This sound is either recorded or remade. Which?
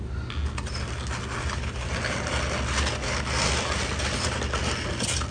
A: recorded